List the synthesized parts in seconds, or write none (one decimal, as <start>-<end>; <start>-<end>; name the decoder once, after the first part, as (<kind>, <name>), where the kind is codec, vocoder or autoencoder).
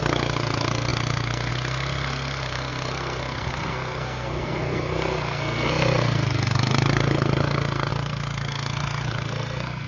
0.0-9.9 (codec, SNAC)